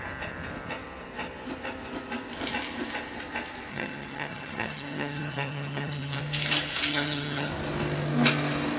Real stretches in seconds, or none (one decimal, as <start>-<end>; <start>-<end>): 0.0-3.7; 6.2-6.9; 7.5-8.8